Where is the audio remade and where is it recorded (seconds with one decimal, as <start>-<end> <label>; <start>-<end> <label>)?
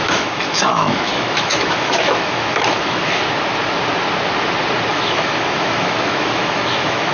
0.0-3.2 remade; 3.2-4.9 recorded; 4.9-7.1 remade